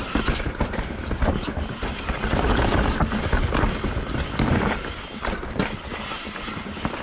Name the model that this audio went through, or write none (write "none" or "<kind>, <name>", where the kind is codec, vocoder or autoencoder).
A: none